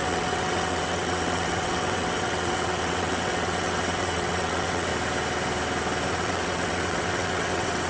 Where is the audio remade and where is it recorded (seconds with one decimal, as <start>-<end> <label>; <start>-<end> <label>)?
0.0-4.9 remade; 4.9-6.1 recorded; 6.1-7.9 remade